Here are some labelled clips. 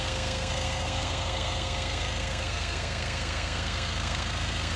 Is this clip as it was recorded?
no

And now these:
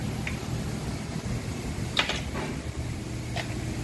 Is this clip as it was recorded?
yes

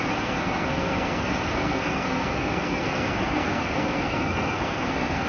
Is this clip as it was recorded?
no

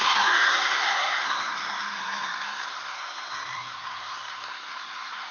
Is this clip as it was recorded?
no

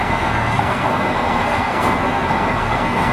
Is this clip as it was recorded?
no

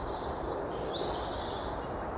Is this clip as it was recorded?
yes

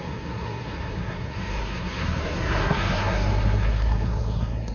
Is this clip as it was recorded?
no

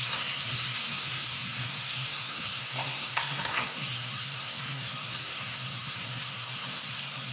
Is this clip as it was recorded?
no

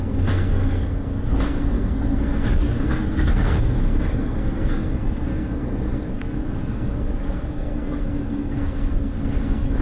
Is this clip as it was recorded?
no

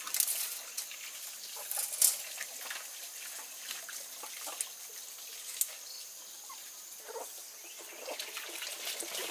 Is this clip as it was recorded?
yes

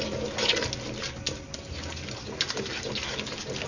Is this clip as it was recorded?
yes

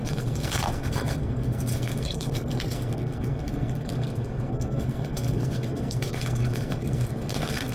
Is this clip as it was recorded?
no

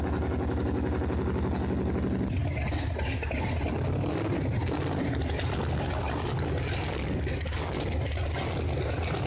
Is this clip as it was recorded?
yes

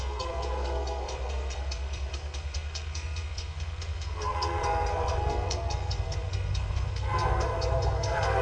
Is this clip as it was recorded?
no